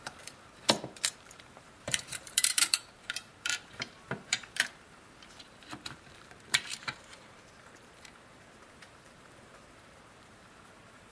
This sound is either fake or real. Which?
fake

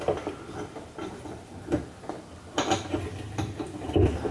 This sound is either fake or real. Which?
real